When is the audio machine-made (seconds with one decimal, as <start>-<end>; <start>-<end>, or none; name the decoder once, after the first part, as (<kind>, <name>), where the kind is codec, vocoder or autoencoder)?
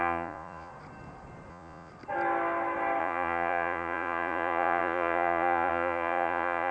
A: 0.0-0.7 (vocoder, Vocos); 1.5-1.9; 3.0-6.7